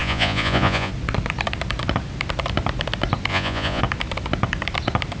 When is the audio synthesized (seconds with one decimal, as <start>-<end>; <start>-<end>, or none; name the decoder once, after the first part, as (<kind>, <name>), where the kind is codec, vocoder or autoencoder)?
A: 0.0-0.9 (vocoder, Vocos); 3.3-3.8